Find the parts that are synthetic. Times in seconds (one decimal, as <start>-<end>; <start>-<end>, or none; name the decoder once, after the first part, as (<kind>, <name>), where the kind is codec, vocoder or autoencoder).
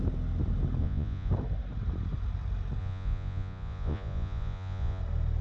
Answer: 0.8-1.3 (vocoder, Vocos); 2.8-5.0